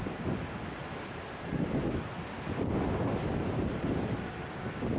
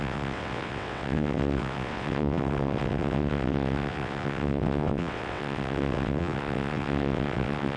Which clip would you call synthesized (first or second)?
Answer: second